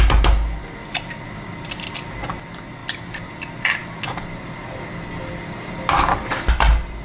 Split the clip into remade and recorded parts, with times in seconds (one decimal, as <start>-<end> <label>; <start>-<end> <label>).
0.0-7.0 recorded